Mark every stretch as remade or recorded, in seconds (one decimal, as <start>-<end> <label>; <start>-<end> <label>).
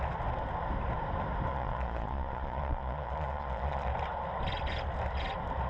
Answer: 0.0-1.5 recorded; 1.5-3.9 remade; 3.9-5.7 recorded